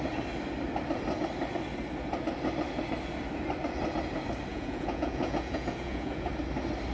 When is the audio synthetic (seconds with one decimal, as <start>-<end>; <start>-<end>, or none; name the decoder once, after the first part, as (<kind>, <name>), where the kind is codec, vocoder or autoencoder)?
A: 4.5-6.3 (vocoder, Vocos)